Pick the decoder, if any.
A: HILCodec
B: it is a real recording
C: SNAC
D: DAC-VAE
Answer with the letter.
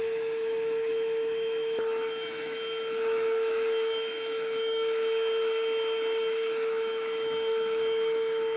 D